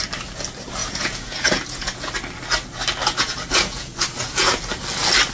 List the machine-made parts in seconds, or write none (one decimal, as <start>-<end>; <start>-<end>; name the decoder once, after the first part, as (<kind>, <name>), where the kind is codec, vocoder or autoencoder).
0.8-2.1 (vocoder, Vocos); 3.0-4.6